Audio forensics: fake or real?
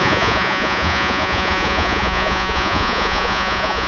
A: fake